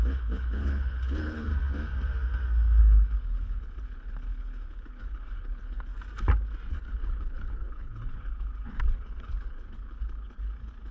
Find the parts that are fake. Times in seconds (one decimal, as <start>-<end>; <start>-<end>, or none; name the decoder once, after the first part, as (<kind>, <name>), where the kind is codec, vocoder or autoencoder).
0.0-1.5 (codec, HILCodec); 2.8-5.9; 6.7-10.9

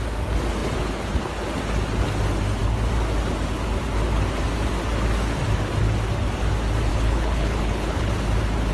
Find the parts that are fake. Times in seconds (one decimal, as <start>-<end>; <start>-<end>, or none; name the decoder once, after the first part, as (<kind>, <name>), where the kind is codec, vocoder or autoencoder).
6.9-8.1 (codec, HILCodec)

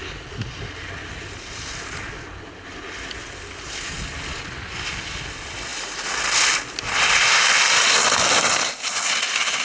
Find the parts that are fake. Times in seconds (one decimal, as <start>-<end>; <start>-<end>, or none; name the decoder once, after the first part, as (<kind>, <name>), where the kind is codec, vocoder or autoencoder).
none

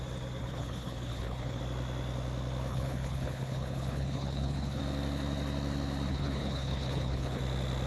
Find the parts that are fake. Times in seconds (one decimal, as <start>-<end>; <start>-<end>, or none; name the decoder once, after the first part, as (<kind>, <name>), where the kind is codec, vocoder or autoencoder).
0.4-1.6 (codec, HILCodec); 2.7-4.8; 6.1-7.4

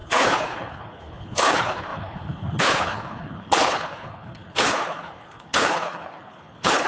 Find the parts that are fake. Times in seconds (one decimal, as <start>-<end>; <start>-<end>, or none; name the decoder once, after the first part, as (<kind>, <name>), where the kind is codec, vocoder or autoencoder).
0.0-6.9 (codec, HILCodec)

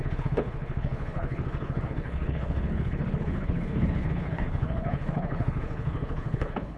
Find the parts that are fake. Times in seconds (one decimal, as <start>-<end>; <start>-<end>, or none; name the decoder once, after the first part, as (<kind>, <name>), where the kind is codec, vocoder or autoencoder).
0.0-6.8 (codec, HILCodec)